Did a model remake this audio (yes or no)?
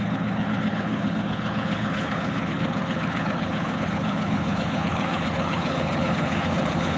yes